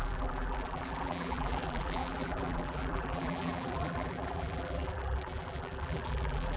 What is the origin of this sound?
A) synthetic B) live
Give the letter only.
A